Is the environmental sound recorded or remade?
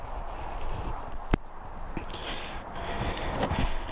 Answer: recorded